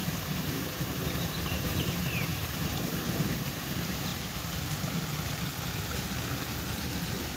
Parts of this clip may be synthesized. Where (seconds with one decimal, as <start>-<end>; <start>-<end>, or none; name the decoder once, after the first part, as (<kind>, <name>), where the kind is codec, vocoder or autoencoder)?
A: 0.0-4.1 (vocoder, BigVGAN v2)